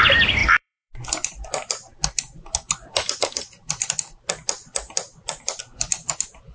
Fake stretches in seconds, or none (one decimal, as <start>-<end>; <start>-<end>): 0.4-0.9